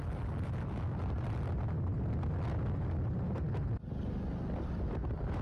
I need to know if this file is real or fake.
real